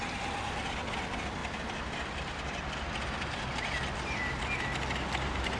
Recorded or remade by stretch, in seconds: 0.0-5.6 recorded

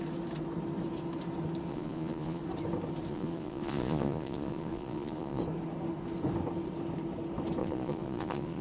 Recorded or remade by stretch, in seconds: 0.0-1.7 recorded; 1.7-2.4 remade; 2.4-3.1 recorded; 3.1-5.4 remade; 5.4-7.6 recorded; 7.6-8.6 remade